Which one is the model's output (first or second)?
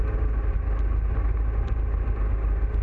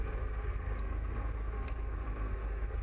second